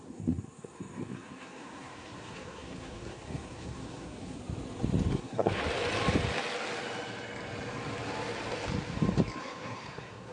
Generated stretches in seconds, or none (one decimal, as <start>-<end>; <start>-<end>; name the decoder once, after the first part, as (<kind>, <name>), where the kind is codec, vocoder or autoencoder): 0.0-4.4 (codec, SNAC); 5.1-5.6; 9.4-10.3